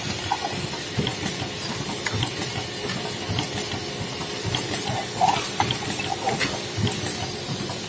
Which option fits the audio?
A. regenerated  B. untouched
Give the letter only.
B